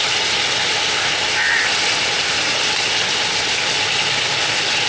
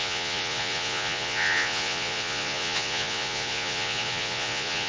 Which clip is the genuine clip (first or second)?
first